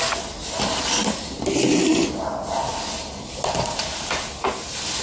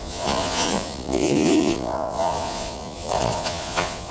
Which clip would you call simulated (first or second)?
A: second